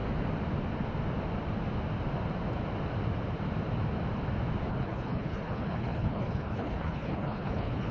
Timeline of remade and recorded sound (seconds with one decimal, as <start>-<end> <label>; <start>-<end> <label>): 0.0-4.7 recorded; 4.7-7.9 remade